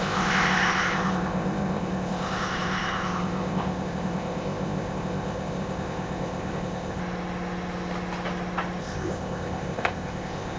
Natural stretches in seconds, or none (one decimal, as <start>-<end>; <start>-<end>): 7.0-8.8